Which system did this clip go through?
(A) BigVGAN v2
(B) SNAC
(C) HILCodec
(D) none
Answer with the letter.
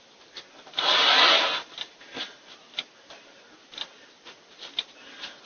D